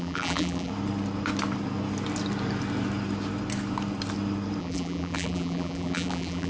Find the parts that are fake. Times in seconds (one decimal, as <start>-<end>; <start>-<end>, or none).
0.0-0.7; 4.6-6.5